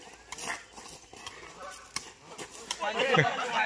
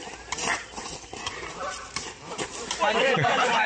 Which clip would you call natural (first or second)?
first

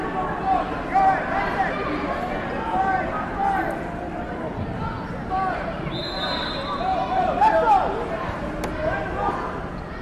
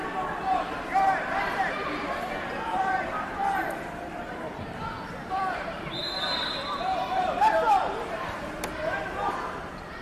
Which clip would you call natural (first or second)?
first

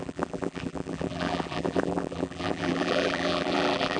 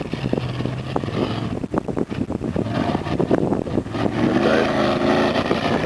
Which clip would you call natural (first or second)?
second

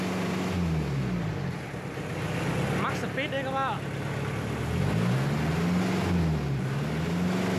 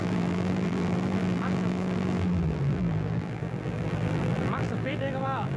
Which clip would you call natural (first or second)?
first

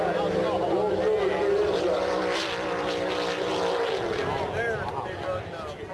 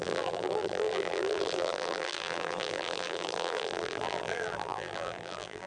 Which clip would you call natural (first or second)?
first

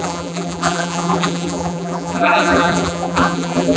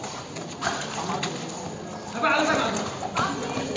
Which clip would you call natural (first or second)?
second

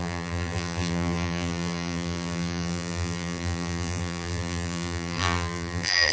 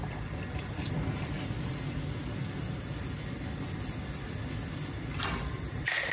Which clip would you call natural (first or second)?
second